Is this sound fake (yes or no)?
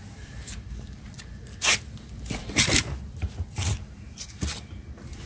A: yes